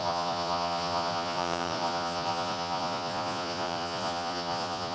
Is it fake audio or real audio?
fake